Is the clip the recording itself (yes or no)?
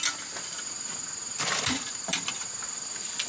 yes